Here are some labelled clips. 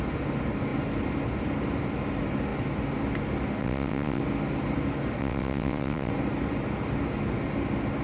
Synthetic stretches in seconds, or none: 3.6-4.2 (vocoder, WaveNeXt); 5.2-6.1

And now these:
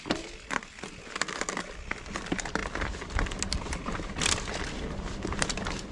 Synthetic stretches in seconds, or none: none

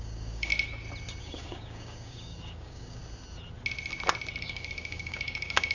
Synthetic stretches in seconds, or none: 0.0-0.5 (codec, DAC); 1.2-3.0; 4.4-5.7

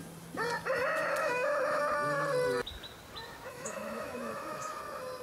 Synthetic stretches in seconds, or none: 1.2-1.8 (autoencoder, DAC-VAE); 3.5-4.8

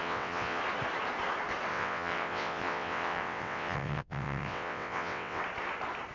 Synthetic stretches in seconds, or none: 0.0-0.6 (vocoder, WaveNeXt); 1.7-5.4

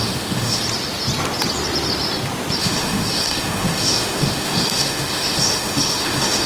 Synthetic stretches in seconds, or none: 0.0-0.6 (autoencoder, DAC-VAE); 2.6-6.5

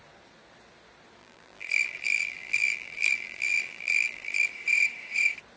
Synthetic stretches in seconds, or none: 1.2-4.5 (vocoder, BigVGAN v2)